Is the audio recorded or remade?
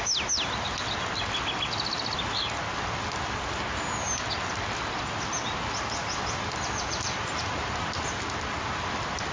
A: recorded